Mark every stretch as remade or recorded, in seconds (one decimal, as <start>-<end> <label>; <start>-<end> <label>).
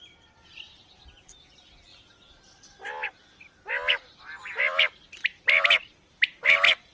0.0-6.9 recorded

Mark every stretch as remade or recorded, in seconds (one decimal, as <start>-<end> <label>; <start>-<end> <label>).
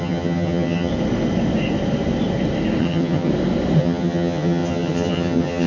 0.0-0.9 remade; 0.9-2.8 recorded; 2.8-3.3 remade; 3.3-3.8 recorded; 3.8-5.7 remade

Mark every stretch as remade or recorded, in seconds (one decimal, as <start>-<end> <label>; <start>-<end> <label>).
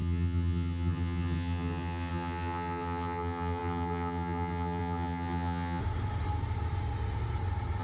0.0-5.8 remade; 5.8-7.8 recorded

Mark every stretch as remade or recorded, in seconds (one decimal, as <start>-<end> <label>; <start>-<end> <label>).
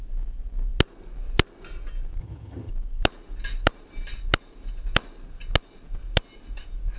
0.0-2.2 recorded; 2.2-2.7 remade; 2.7-7.0 recorded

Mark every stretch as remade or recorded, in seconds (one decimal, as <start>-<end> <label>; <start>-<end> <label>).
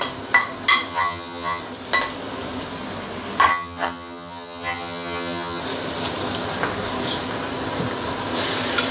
0.0-0.9 recorded; 0.9-1.6 remade; 1.6-3.5 recorded; 3.5-5.6 remade; 5.6-8.9 recorded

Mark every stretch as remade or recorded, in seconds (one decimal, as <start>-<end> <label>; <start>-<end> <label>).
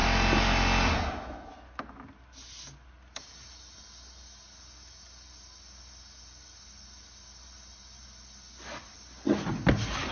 0.0-10.1 recorded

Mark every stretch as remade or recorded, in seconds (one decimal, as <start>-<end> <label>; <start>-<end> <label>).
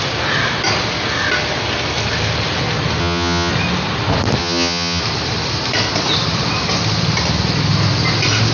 0.0-3.0 recorded; 3.0-3.5 remade; 3.5-4.4 recorded; 4.4-5.0 remade; 5.0-8.5 recorded